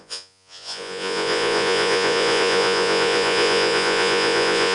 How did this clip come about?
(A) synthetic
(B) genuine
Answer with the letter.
A